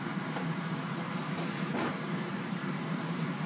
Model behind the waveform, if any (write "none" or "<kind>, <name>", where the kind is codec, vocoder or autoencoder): vocoder, BigVGAN v2